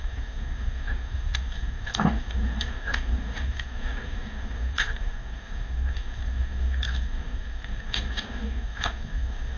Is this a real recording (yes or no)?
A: no